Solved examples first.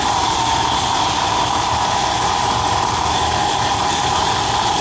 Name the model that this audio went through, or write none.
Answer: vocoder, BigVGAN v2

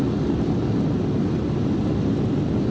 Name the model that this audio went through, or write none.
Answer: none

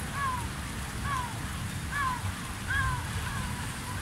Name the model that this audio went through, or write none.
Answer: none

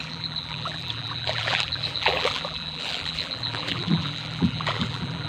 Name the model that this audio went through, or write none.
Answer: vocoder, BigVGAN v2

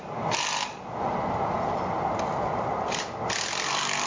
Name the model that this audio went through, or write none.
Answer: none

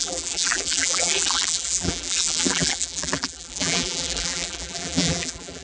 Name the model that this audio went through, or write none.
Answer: vocoder, BigVGAN v2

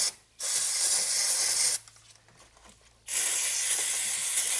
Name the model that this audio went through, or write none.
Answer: none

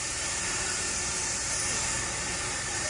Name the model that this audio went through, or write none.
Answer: vocoder, BigVGAN v2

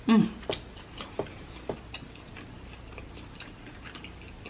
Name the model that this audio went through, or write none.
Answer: none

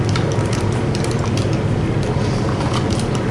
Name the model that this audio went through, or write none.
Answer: none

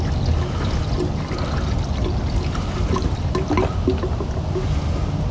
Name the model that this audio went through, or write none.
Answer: none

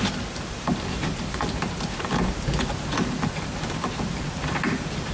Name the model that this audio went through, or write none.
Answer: vocoder, BigVGAN v2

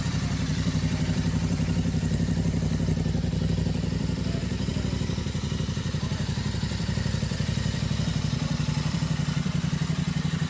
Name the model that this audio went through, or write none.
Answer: vocoder, BigVGAN v2